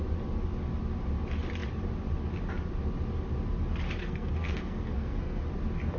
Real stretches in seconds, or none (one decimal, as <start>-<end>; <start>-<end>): 0.0-4.0; 5.4-6.0

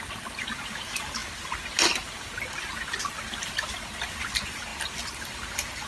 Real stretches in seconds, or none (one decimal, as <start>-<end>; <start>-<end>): 0.0-5.9

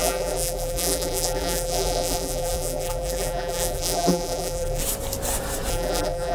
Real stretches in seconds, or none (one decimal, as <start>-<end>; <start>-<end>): 4.8-5.7

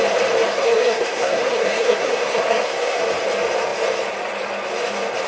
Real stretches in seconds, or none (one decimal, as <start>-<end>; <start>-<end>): 0.0-0.5; 3.0-5.3